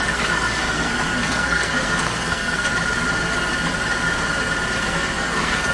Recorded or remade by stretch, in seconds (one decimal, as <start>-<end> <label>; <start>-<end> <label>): 0.0-2.7 remade; 2.7-4.8 recorded; 4.8-5.7 remade